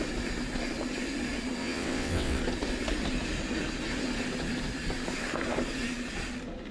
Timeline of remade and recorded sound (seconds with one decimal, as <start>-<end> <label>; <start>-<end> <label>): 0.0-1.6 recorded; 1.6-2.4 remade; 2.4-6.7 recorded